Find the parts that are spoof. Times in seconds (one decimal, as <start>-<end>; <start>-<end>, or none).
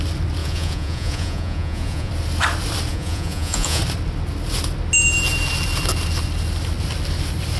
0.4-2.1; 2.9-3.8